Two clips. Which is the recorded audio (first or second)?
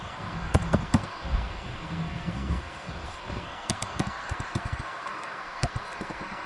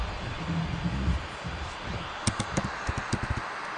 second